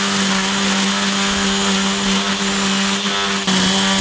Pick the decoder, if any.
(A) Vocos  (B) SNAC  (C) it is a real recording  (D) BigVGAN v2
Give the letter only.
C